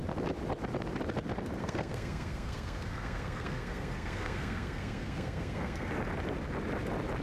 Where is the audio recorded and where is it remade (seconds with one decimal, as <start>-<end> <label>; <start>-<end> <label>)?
0.0-1.6 recorded; 1.6-5.9 remade; 5.9-7.2 recorded